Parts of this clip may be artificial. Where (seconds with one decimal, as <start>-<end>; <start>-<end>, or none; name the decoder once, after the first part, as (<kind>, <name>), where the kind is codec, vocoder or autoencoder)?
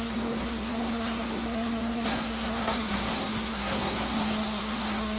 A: 0.0-5.2 (codec, SNAC)